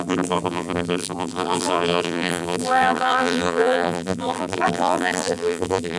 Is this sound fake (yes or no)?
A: yes